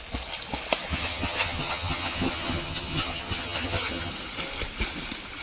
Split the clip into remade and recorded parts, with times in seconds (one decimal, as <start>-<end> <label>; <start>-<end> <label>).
0.0-0.9 recorded; 0.9-4.1 remade; 4.1-5.4 recorded